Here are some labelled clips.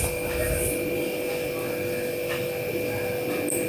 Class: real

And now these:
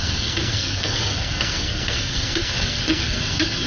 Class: fake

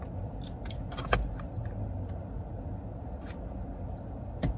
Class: real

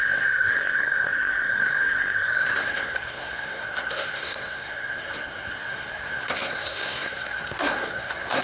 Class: fake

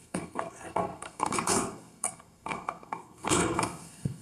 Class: fake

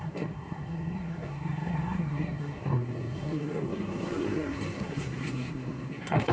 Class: fake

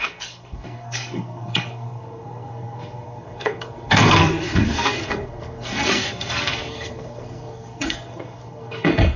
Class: fake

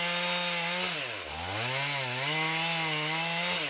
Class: real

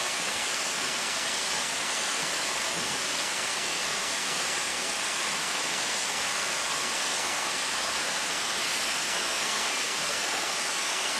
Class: fake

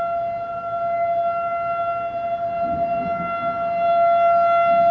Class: real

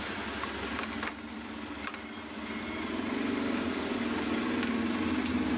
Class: real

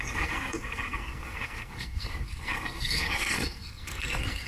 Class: fake